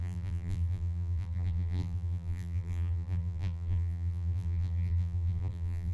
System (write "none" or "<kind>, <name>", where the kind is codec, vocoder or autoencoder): vocoder, BigVGAN v2